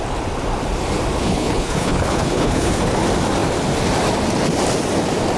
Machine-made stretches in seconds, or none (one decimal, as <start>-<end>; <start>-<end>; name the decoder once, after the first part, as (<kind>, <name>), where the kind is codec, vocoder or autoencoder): 1.2-2.8 (codec, HILCodec)